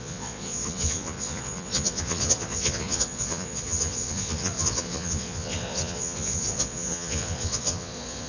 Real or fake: fake